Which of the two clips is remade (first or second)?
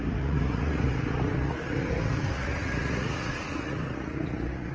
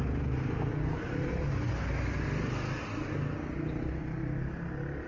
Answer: first